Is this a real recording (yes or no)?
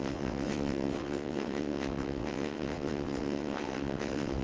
no